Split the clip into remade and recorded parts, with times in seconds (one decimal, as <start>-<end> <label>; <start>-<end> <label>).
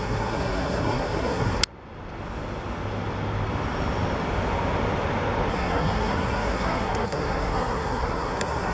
0.0-1.6 remade; 1.6-5.5 recorded; 5.5-8.7 remade